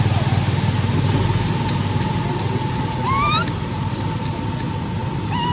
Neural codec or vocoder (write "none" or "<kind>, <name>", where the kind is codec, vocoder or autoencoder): none